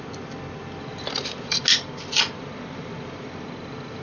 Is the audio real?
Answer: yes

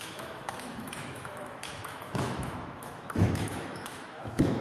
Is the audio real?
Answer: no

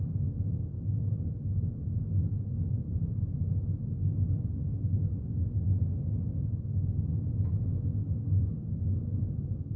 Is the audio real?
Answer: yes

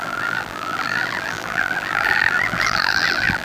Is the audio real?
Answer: no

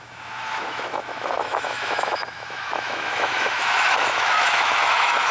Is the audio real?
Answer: no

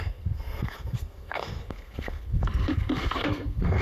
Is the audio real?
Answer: no